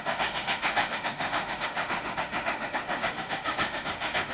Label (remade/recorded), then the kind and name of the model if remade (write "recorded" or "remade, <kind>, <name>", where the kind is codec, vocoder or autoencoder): remade, autoencoder, DAC-VAE